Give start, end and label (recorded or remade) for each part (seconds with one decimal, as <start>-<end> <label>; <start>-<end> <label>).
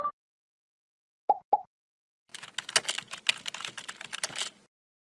0.0-5.0 recorded